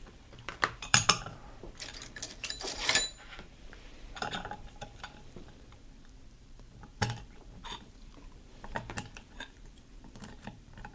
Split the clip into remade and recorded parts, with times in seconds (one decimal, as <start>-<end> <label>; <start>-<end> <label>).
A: 0.0-10.9 remade